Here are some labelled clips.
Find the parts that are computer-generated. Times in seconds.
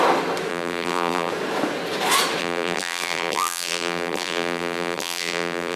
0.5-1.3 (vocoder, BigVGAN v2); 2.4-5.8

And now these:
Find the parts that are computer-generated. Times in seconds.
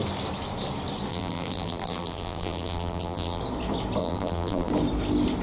1.1-3.4 (vocoder, BigVGAN v2); 4.0-4.7